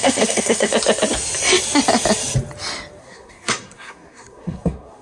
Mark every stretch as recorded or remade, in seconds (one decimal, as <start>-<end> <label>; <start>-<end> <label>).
0.0-0.7 remade; 0.7-3.0 recorded; 3.0-5.0 remade

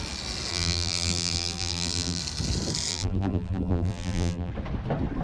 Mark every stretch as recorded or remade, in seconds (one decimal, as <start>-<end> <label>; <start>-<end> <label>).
0.0-0.5 recorded; 0.5-2.2 remade; 2.2-2.9 recorded; 2.9-4.5 remade; 4.5-5.2 recorded

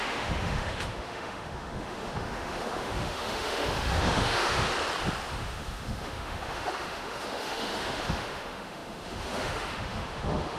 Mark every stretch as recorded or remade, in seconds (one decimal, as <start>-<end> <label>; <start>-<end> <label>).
0.0-4.7 remade; 4.7-5.3 recorded; 5.3-10.6 remade

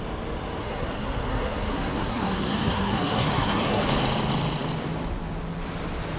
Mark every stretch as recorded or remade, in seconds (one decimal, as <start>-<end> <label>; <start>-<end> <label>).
0.0-0.6 recorded; 0.6-3.8 remade; 3.8-6.2 recorded